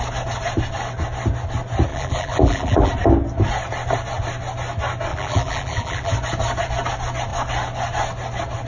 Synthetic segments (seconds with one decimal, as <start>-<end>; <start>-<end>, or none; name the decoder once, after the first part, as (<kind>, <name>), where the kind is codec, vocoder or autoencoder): 1.9-2.9 (vocoder, BigVGAN v2); 5.1-6.1

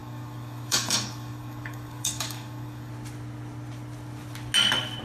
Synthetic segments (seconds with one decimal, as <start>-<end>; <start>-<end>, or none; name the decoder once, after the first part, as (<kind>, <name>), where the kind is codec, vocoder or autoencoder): 0.0-2.9 (codec, DAC)

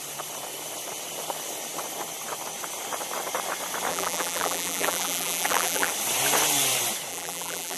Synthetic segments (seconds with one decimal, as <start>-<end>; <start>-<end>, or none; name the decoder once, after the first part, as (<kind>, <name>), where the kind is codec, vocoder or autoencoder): 3.9-5.9 (vocoder, BigVGAN v2); 7.1-7.8